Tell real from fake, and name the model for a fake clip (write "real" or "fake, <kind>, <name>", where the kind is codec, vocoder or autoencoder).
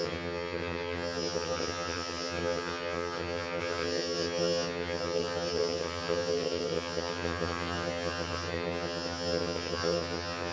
fake, vocoder, HiFi-GAN